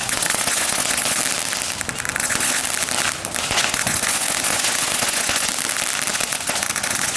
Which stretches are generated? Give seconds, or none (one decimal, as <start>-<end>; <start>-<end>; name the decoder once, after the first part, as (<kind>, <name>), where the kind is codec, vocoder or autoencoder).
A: 0.0-1.2 (vocoder, Vocos); 2.1-2.6; 3.4-5.5; 6.1-7.2